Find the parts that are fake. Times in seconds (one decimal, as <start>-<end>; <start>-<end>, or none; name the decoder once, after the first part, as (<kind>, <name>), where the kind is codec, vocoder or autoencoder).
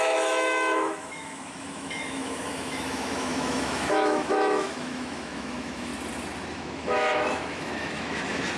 0.0-5.9 (autoencoder, DAC-VAE); 6.5-8.6